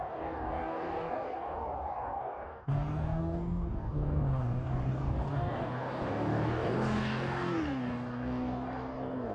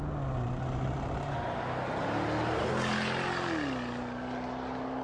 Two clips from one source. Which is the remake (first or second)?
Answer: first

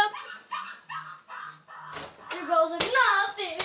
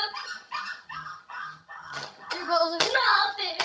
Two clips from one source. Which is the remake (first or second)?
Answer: second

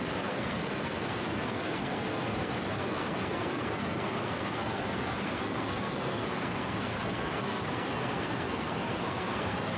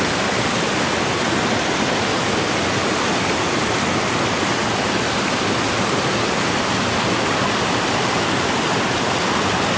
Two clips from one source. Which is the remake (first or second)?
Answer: first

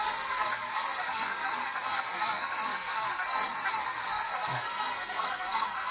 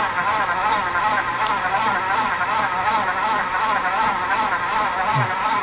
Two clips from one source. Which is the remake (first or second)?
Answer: first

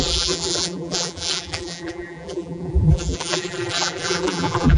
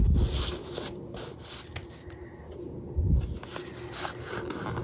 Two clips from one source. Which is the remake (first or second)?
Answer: first